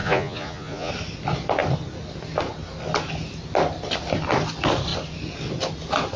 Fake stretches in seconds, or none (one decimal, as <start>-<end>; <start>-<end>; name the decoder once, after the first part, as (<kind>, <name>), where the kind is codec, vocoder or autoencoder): 0.0-0.9 (vocoder, Vocos)

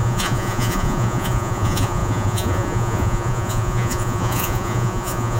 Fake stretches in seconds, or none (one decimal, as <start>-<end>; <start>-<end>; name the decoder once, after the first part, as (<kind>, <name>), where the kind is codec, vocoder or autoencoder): 0.0-5.4 (vocoder, Vocos)

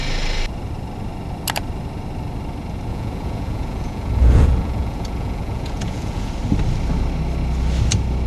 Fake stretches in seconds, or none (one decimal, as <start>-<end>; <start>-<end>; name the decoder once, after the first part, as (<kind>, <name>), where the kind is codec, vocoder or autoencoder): 2.9-6.3 (vocoder, Vocos)